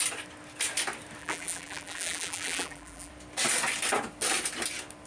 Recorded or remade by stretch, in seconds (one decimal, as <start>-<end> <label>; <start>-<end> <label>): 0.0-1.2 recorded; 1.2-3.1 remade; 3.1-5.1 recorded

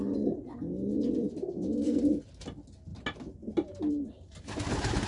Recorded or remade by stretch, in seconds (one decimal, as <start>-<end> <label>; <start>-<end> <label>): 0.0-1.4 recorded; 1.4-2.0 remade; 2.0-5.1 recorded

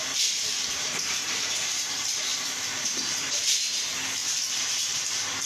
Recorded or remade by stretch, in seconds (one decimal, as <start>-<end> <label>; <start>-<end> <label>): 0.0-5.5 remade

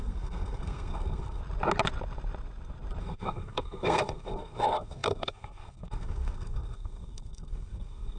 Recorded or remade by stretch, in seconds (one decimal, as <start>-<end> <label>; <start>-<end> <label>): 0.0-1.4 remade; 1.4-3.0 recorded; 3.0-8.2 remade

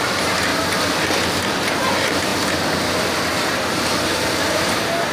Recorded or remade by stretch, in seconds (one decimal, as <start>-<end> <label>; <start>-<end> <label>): 0.0-0.5 remade; 0.5-1.3 recorded; 1.3-2.3 remade; 2.3-3.6 recorded; 3.6-5.1 remade

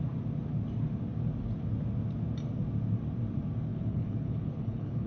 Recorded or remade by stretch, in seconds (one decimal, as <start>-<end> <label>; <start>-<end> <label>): 0.0-3.7 recorded; 3.7-5.1 remade

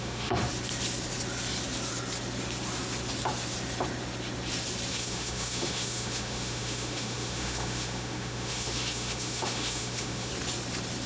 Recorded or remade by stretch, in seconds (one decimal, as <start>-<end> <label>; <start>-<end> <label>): 0.0-0.4 remade; 0.4-4.9 recorded; 4.9-10.3 remade; 10.3-11.1 recorded

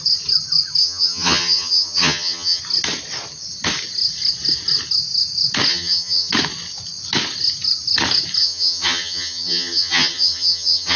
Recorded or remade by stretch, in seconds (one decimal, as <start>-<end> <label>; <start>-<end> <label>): 0.0-0.8 recorded; 0.8-2.6 remade; 2.6-5.7 recorded; 5.7-6.3 remade; 6.3-8.4 recorded; 8.4-11.0 remade